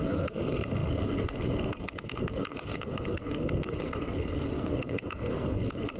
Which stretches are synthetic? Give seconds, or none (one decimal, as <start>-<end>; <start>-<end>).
0.0-6.0